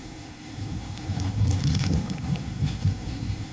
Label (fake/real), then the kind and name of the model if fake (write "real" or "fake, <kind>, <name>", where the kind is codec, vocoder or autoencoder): fake, codec, SNAC